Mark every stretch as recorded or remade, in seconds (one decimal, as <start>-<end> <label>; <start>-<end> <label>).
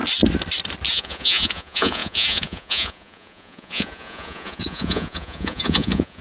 0.0-0.9 recorded; 0.9-6.2 remade